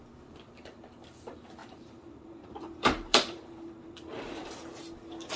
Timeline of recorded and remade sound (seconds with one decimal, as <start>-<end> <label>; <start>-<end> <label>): 0.0-1.6 recorded; 1.6-4.8 remade; 4.8-5.4 recorded